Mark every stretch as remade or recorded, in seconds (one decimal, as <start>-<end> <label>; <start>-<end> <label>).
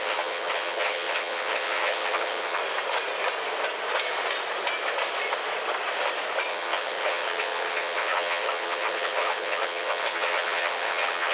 0.0-2.6 remade; 2.6-6.5 recorded; 6.5-11.3 remade